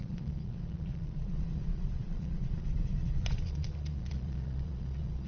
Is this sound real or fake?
fake